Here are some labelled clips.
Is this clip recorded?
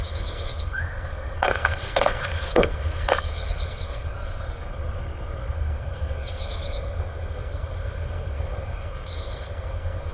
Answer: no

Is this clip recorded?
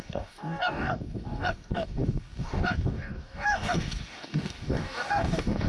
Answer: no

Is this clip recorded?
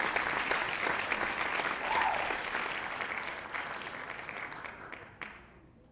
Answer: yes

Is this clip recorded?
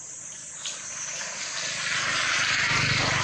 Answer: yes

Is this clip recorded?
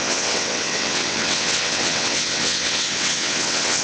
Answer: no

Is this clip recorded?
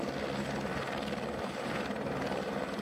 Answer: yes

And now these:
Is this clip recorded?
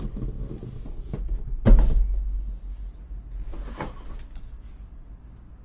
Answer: yes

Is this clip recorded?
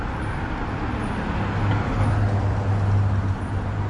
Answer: yes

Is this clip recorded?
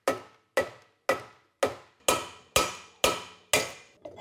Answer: yes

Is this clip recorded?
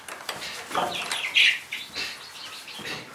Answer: yes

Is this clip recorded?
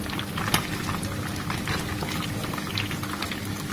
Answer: yes